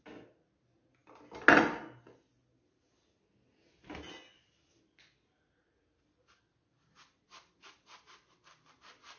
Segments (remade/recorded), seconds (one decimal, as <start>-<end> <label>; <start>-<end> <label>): 0.0-9.2 recorded